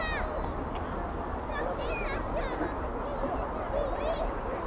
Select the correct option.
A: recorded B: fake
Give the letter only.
A